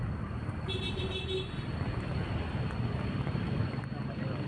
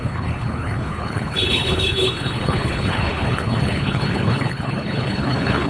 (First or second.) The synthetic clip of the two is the second